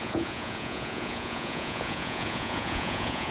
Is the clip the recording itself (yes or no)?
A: no